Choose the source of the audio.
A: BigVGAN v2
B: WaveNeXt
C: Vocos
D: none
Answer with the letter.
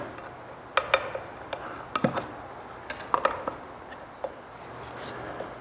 D